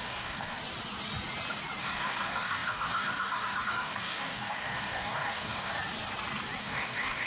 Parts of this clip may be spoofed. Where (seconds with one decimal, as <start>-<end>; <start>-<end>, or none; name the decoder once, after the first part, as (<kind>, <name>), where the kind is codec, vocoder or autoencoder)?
0.0-0.6 (codec, DAC); 1.8-5.7; 6.6-7.3